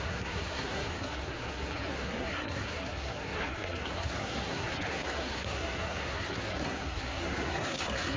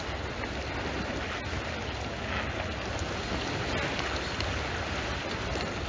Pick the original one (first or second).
second